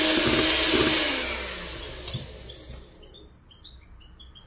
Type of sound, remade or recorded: recorded